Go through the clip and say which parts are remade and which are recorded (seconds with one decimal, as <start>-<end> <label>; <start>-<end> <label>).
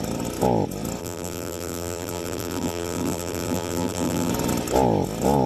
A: 0.0-1.0 recorded; 1.0-4.3 remade; 4.3-5.5 recorded